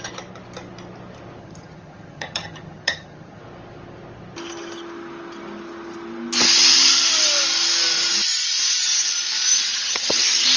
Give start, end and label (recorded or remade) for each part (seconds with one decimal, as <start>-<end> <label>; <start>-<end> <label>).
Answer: 0.0-1.4 recorded; 1.4-3.4 remade; 3.4-9.7 recorded; 9.7-10.2 remade; 10.2-10.6 recorded